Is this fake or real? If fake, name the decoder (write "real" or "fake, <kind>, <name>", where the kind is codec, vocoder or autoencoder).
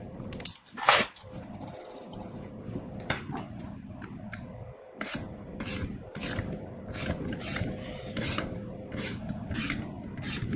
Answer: fake, vocoder, BigVGAN v2